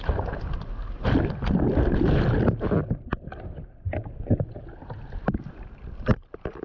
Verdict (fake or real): real